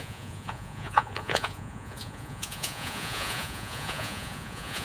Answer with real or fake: fake